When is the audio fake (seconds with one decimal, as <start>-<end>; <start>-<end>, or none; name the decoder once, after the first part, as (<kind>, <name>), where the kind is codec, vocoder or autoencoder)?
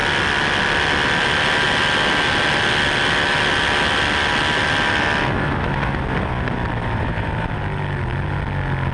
6.8-7.6 (vocoder, BigVGAN v2)